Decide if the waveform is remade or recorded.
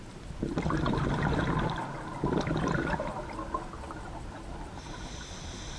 recorded